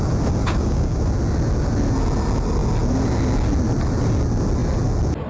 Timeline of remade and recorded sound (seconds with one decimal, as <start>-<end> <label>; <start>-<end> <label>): 0.0-0.4 recorded; 0.4-1.0 remade; 1.0-5.3 recorded

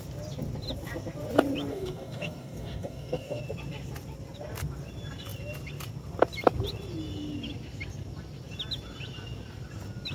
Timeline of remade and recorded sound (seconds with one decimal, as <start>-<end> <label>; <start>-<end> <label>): 0.0-1.7 recorded; 1.7-3.4 remade; 3.4-10.1 recorded

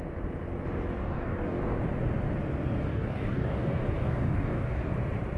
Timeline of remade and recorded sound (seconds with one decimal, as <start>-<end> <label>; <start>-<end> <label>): 0.0-1.0 recorded; 1.0-1.6 remade; 1.6-2.9 recorded; 2.9-4.9 remade; 4.9-5.4 recorded

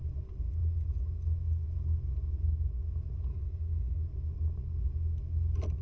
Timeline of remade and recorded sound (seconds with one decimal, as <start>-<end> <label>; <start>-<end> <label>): 0.0-3.3 recorded; 3.3-4.0 remade; 4.0-5.8 recorded

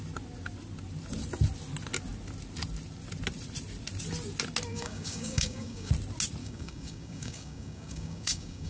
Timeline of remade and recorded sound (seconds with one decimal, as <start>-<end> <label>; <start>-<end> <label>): 0.0-4.7 recorded; 4.7-5.9 remade; 5.9-6.4 recorded; 6.4-8.7 remade

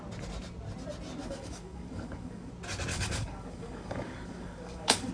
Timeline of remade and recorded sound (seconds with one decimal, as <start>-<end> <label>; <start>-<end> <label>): 0.0-1.2 recorded; 1.2-2.5 remade; 2.5-2.9 recorded; 2.9-5.1 remade

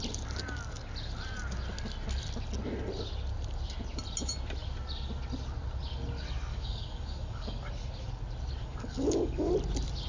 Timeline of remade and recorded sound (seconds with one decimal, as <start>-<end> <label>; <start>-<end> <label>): 0.0-6.5 recorded; 6.5-7.7 remade; 7.7-8.6 recorded; 8.6-9.5 remade; 9.5-10.1 recorded

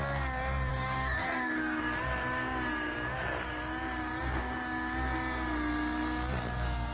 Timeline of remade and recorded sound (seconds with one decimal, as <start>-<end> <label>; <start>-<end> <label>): 0.0-0.7 recorded; 0.7-1.8 remade; 1.8-6.9 recorded